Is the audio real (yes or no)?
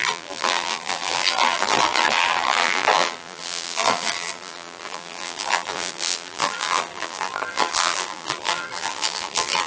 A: no